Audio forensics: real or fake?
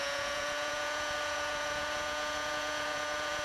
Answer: fake